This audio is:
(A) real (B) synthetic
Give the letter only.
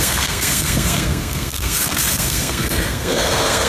B